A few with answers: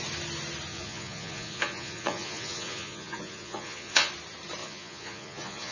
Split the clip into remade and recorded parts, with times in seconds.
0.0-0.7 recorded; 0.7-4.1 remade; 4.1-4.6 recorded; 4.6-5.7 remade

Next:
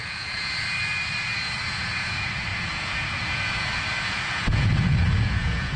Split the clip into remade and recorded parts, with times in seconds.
0.0-0.6 remade; 0.6-1.6 recorded; 1.6-5.8 remade

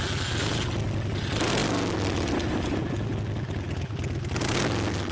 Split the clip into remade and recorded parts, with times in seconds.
0.0-5.1 recorded

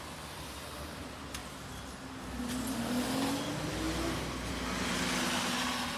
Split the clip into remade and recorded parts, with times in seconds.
0.0-6.0 recorded

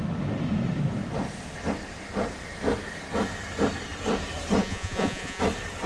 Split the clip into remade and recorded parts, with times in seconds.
0.0-4.6 recorded; 4.6-5.4 remade; 5.4-5.9 recorded

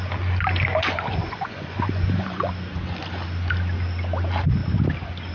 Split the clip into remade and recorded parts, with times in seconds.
0.0-1.2 recorded; 1.2-2.5 remade; 2.5-5.3 recorded